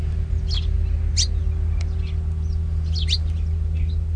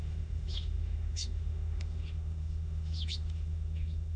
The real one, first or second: first